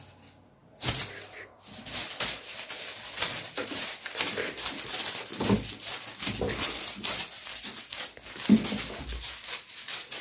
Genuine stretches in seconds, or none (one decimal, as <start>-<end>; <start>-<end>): 0.0-10.2

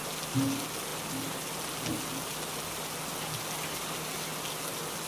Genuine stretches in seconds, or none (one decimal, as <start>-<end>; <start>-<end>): 0.0-5.1